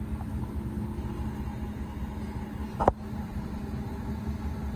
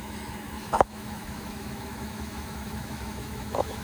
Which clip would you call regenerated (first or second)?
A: second